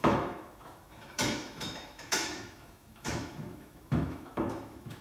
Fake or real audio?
fake